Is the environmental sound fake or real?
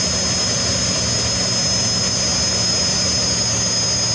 real